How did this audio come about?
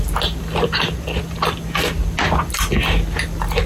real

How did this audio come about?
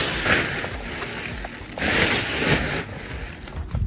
real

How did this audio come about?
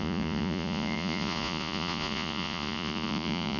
fake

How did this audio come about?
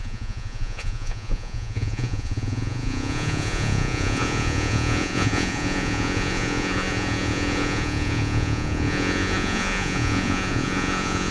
fake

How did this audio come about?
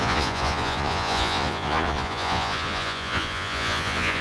fake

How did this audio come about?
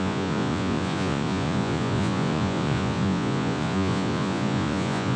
fake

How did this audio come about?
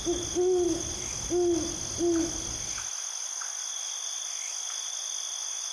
real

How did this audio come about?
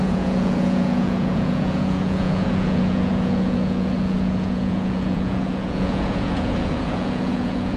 fake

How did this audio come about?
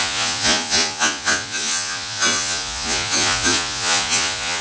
fake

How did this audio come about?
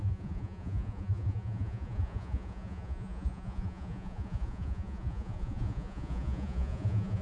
fake